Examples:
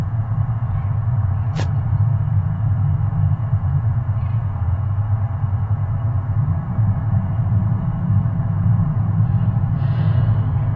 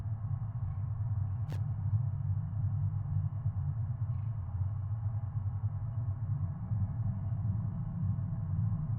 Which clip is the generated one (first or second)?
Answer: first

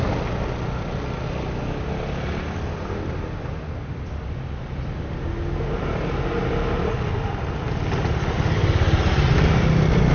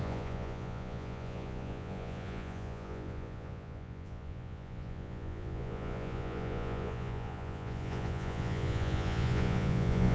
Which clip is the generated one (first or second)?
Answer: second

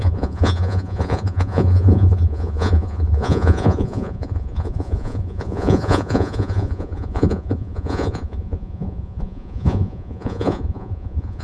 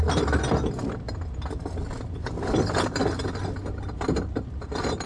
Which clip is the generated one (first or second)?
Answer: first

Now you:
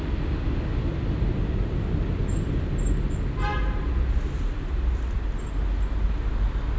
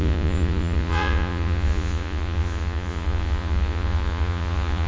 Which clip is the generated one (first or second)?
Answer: second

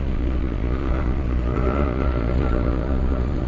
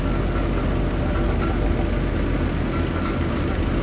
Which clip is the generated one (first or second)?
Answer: first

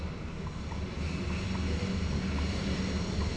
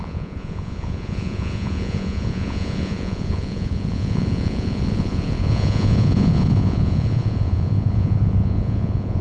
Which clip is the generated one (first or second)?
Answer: second